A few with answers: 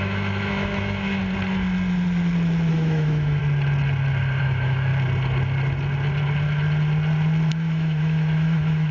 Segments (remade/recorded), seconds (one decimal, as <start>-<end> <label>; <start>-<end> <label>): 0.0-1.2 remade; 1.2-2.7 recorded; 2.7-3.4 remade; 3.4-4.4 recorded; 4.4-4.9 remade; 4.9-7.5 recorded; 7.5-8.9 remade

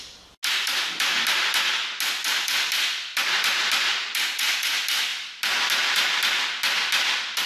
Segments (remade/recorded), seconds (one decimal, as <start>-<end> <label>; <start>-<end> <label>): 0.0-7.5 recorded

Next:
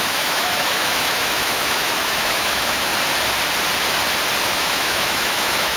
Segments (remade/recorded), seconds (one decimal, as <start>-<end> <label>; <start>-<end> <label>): 0.0-2.9 remade; 2.9-4.4 recorded; 4.4-5.8 remade